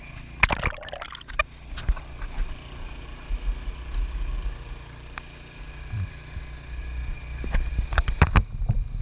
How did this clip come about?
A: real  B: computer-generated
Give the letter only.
A